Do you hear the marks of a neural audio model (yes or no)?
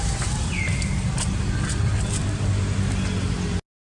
no